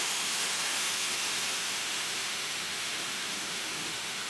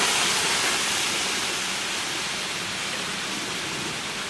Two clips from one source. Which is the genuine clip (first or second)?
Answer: second